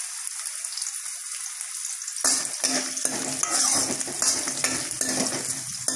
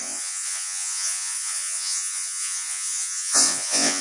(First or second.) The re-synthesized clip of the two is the second